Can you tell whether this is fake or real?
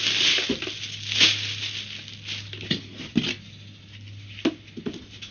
real